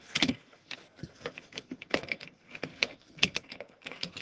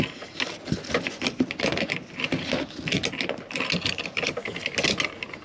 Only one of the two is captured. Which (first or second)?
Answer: second